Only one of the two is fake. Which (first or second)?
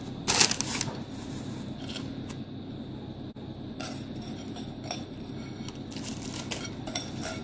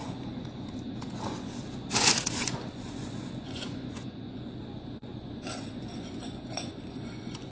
second